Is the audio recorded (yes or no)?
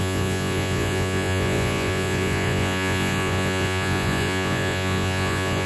no